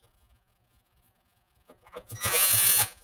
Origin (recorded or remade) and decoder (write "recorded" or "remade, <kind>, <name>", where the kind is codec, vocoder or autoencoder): remade, vocoder, Vocos